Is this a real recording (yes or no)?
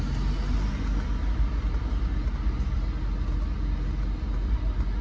yes